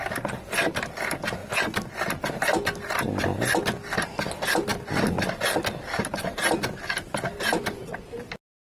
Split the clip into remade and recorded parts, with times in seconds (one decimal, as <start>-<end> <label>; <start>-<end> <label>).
0.0-8.7 recorded